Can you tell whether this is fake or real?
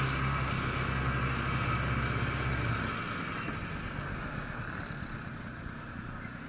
real